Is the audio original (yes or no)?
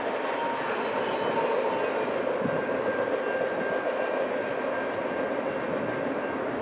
yes